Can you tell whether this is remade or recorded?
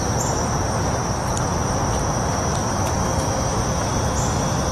remade